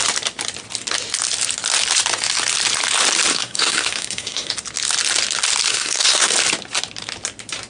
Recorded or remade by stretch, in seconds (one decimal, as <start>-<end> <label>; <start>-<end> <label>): 0.0-3.3 recorded; 3.3-4.5 remade; 4.5-5.7 recorded; 5.7-6.3 remade; 6.3-7.7 recorded